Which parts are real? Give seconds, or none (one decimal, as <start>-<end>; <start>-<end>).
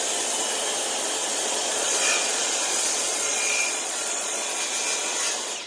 0.0-1.2; 4.6-5.7